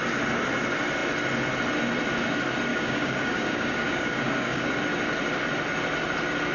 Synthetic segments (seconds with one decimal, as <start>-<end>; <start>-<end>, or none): 2.7-4.8